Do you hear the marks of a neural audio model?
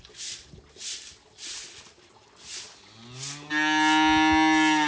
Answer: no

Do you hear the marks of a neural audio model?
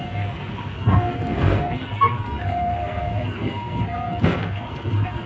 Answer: yes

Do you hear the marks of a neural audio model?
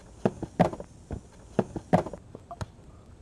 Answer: no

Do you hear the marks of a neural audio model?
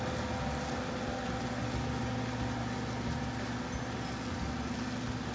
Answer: no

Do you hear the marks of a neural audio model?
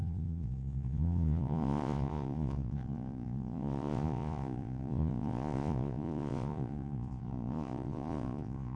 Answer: yes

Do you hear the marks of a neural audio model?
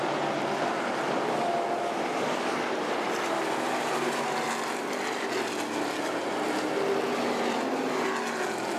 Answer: no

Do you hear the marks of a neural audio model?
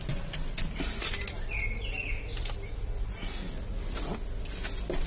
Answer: no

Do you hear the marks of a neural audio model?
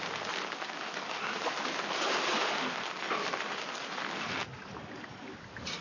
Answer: no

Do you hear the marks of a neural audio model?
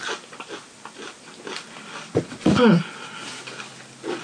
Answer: no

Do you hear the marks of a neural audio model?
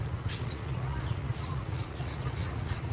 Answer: yes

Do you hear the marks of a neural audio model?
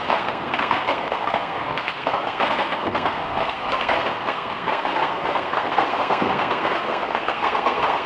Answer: yes